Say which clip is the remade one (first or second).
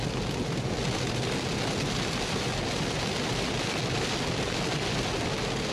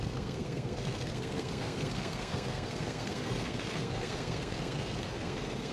second